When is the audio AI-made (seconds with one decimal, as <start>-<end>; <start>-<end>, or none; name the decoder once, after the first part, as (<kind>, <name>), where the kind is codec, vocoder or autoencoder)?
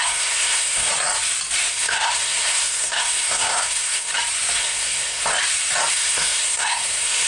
0.0-0.9 (codec, SNAC); 1.7-4.1; 4.6-5.2; 5.9-7.3